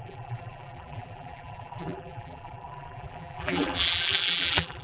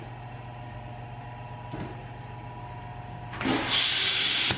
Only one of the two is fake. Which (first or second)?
first